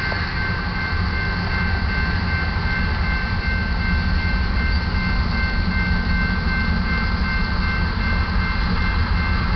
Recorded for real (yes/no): yes